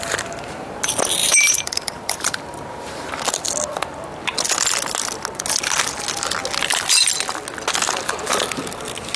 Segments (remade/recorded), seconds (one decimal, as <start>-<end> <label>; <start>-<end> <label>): 0.0-1.2 recorded; 1.2-3.1 remade; 3.1-9.2 recorded